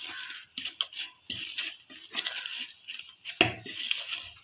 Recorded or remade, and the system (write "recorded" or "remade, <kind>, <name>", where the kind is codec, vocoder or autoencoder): recorded